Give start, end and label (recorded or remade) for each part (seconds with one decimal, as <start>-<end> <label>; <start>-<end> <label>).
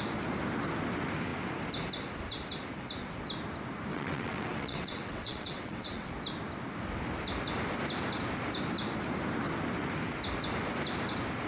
0.0-3.9 recorded; 3.9-6.1 remade; 6.1-11.5 recorded